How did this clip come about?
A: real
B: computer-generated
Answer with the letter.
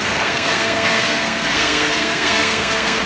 B